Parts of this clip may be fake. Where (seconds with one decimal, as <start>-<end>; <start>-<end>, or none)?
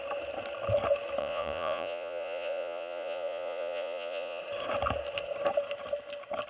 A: 1.2-4.4